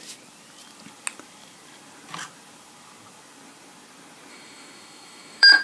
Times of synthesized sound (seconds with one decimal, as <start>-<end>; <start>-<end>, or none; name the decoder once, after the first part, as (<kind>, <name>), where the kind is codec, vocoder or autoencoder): 4.3-5.6 (autoencoder, DAC-VAE)